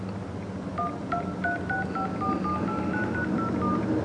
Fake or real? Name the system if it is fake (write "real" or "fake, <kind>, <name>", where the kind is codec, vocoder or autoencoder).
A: real